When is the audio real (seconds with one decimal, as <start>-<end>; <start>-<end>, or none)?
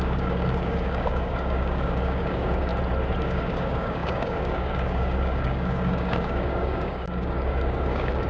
2.7-3.2